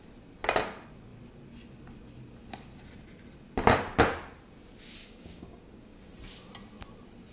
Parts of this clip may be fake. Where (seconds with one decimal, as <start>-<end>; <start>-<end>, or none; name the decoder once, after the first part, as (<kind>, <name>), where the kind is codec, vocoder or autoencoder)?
5.0-6.0 (codec, DAC)